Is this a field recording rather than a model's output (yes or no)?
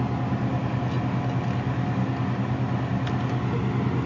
yes